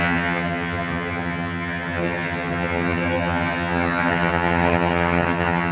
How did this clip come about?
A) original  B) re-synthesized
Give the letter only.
B